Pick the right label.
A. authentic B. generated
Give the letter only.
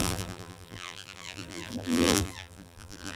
B